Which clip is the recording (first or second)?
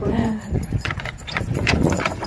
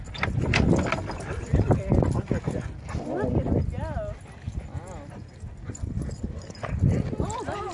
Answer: second